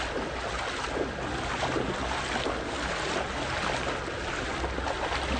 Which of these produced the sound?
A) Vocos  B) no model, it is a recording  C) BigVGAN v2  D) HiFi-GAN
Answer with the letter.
B